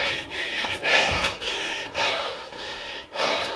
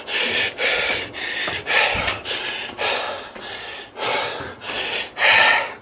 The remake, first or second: first